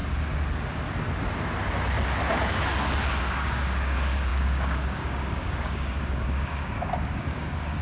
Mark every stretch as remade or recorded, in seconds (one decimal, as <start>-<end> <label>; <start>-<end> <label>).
0.0-3.2 recorded; 3.2-7.8 remade